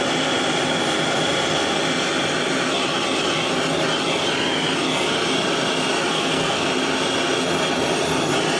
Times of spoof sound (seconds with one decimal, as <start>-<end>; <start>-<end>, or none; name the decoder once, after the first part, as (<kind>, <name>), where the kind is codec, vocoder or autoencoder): 6.1-6.7 (codec, SNAC)